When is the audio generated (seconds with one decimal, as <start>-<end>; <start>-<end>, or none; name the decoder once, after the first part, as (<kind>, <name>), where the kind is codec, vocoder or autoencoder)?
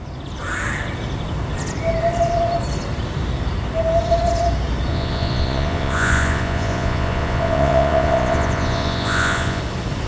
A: 4.9-9.6 (vocoder, Vocos)